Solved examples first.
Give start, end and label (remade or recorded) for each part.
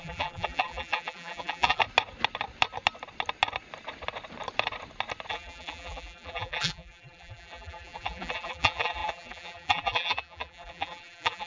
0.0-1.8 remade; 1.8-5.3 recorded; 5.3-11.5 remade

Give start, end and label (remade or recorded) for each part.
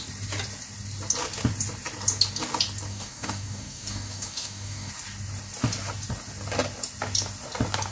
0.0-2.9 recorded; 2.9-4.9 remade; 4.9-7.9 recorded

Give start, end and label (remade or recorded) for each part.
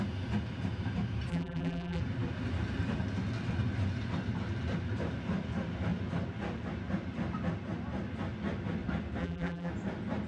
0.0-1.3 recorded; 1.3-2.0 remade; 2.0-9.2 recorded; 9.2-9.7 remade; 9.7-10.3 recorded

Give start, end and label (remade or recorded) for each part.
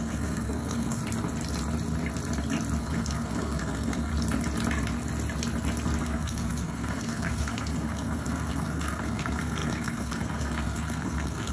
0.0-1.0 remade; 1.0-2.8 recorded; 2.8-4.1 remade; 4.1-6.0 recorded; 6.0-11.5 remade